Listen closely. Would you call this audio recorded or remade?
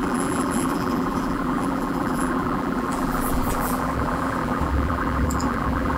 remade